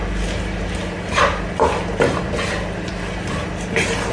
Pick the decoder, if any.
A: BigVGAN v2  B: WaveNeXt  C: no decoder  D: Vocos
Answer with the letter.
C